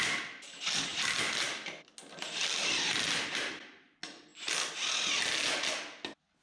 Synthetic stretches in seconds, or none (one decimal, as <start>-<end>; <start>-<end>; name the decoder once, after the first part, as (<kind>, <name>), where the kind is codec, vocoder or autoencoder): none